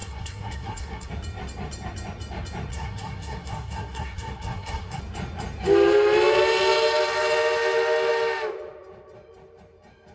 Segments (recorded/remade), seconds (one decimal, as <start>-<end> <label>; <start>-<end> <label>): 0.0-1.1 remade; 1.1-2.7 recorded; 2.7-5.0 remade; 5.0-10.1 recorded